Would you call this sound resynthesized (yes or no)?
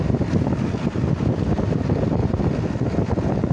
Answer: no